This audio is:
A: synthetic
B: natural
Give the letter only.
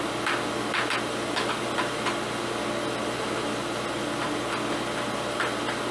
B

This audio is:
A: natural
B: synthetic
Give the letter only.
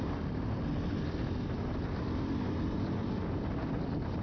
A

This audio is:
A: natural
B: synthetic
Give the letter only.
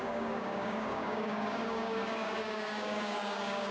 B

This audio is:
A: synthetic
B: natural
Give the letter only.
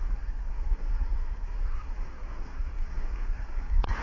A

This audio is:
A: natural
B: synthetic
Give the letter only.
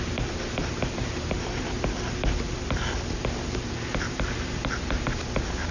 A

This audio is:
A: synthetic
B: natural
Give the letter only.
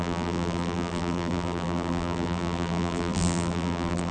A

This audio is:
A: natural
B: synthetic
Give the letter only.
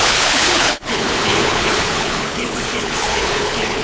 B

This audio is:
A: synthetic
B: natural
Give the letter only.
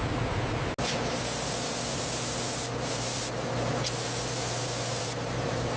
B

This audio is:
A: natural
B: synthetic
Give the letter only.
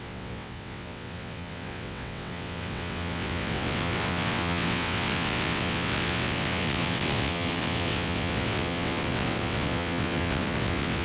B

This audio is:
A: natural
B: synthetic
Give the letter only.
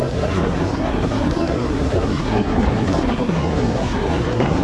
B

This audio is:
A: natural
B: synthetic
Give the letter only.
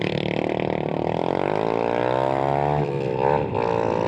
A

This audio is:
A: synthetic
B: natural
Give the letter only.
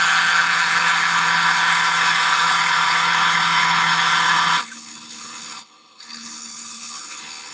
A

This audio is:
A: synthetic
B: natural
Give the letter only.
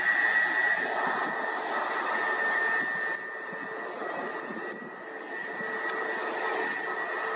B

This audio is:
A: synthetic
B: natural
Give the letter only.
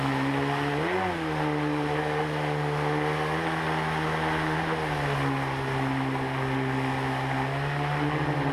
B